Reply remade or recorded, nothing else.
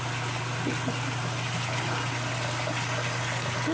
recorded